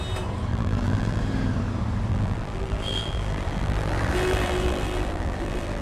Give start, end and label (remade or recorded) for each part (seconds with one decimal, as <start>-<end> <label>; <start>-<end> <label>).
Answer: 0.0-0.5 recorded; 0.5-1.2 remade; 1.2-2.1 recorded; 2.1-5.8 remade

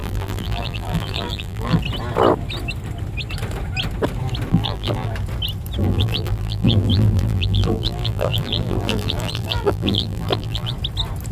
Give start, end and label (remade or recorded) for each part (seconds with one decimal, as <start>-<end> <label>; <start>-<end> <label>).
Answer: 0.0-1.8 remade; 1.8-4.5 recorded; 4.5-5.1 remade; 5.1-5.8 recorded; 5.8-10.7 remade; 10.7-11.3 recorded

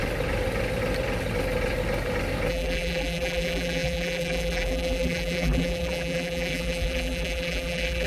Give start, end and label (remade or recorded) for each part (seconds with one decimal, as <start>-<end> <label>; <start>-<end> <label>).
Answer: 0.0-2.5 recorded; 2.5-8.1 remade

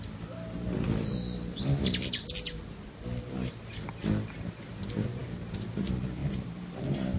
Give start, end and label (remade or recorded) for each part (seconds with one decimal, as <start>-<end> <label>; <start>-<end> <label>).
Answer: 0.0-7.2 recorded

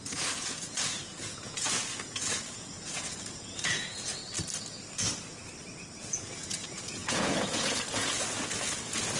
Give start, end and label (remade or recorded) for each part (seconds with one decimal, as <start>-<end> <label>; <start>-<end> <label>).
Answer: 0.0-4.2 remade; 4.2-6.0 recorded; 6.0-9.2 remade

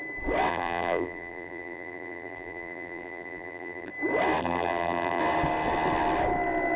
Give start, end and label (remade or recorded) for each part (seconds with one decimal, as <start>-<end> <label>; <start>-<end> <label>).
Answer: 0.0-0.5 recorded; 0.5-3.9 remade; 3.9-4.4 recorded; 4.4-5.2 remade; 5.2-6.8 recorded

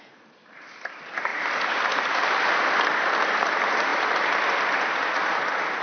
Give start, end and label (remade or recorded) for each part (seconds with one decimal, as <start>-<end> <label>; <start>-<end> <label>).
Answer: 0.0-5.8 recorded